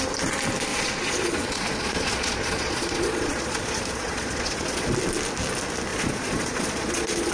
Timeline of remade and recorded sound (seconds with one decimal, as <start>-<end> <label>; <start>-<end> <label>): 0.0-0.7 recorded; 0.7-4.9 remade; 4.9-5.9 recorded; 5.9-7.3 remade